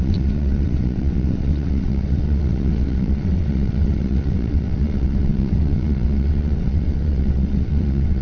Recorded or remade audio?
remade